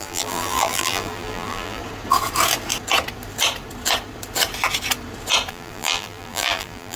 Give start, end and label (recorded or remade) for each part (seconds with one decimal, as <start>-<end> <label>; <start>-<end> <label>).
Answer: 0.0-1.8 remade; 1.8-5.5 recorded; 5.5-7.0 remade